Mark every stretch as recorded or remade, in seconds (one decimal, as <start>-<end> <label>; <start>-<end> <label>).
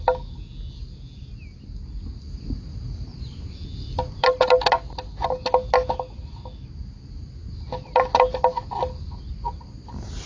0.0-10.3 recorded